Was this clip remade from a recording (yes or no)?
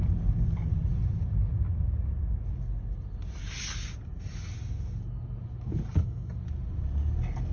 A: no